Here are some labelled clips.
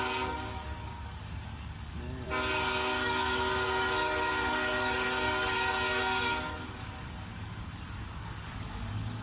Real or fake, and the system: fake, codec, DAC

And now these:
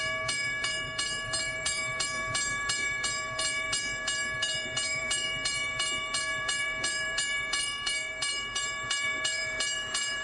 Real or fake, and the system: fake, vocoder, BigVGAN v2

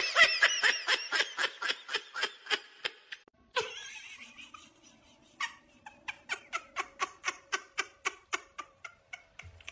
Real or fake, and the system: fake, vocoder, BigVGAN v2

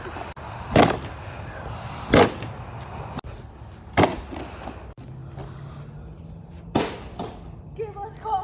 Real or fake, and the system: real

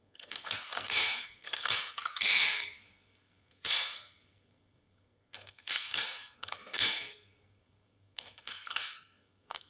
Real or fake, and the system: fake, codec, SNAC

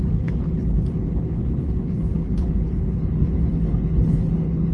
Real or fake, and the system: fake, codec, HILCodec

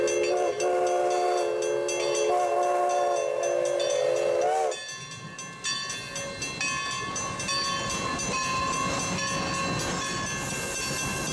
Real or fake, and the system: real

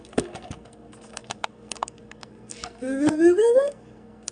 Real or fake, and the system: fake, codec, SNAC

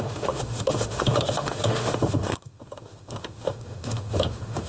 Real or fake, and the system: fake, autoencoder, DAC-VAE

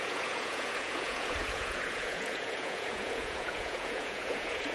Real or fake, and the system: fake, vocoder, Vocos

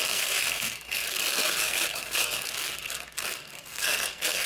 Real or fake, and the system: fake, codec, SNAC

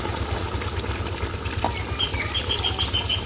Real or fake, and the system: real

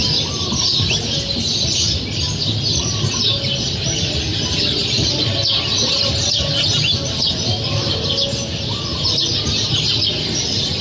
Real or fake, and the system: real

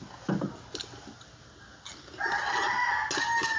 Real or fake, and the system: real